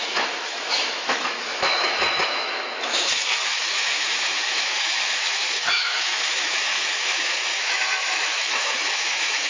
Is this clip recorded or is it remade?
remade